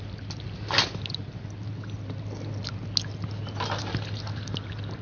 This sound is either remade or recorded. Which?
recorded